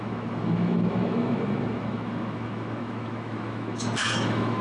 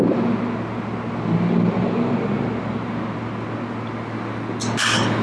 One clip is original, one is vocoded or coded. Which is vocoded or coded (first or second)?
first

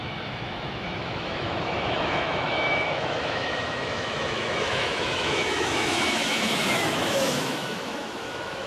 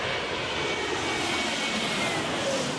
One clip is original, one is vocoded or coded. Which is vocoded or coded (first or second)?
first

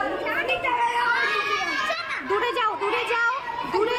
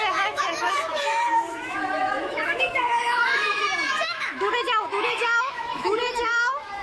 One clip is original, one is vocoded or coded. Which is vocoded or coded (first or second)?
second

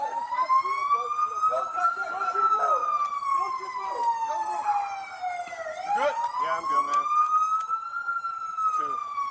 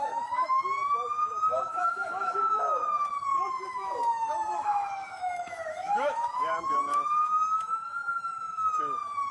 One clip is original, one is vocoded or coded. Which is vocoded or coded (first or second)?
second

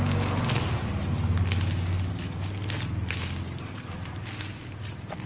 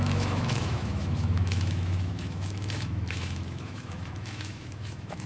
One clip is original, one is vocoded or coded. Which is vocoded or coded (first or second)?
second